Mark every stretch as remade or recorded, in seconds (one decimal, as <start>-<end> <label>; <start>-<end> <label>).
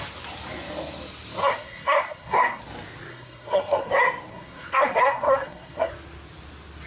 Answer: 0.0-1.4 recorded; 1.4-2.6 remade; 2.6-3.1 recorded; 3.1-3.9 remade; 3.9-4.3 recorded; 4.3-5.9 remade; 5.9-6.9 recorded